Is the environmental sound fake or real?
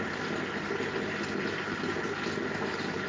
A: real